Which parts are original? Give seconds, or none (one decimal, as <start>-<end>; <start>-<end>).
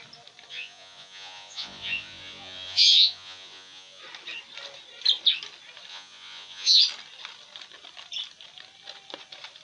0.0-0.5; 4.0-5.9; 6.8-9.6